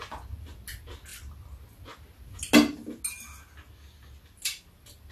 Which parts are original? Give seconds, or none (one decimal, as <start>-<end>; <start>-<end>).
0.0-5.1